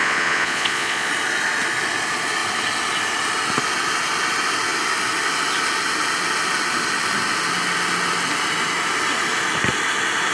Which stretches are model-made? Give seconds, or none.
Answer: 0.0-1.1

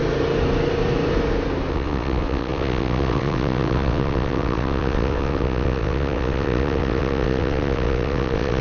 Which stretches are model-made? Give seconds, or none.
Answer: 1.7-8.6

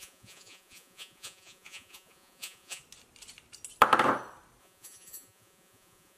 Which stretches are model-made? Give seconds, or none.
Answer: 0.0-2.8; 4.6-6.2

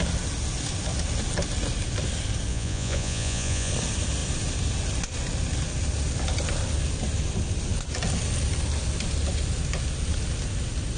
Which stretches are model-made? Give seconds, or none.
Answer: 2.5-3.7